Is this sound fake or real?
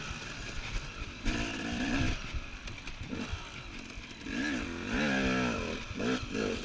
real